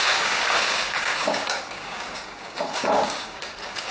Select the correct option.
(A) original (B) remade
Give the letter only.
B